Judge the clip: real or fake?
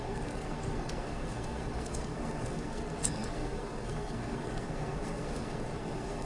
fake